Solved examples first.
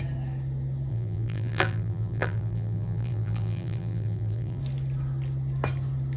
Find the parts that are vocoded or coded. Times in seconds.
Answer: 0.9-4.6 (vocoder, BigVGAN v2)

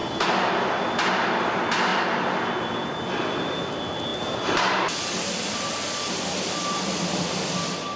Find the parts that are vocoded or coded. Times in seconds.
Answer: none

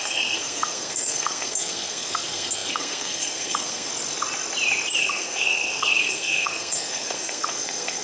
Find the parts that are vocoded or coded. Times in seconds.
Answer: 0.0-3.9 (codec, SNAC); 5.0-8.0